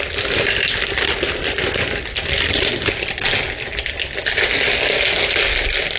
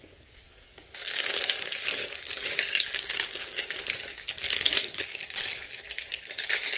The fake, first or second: second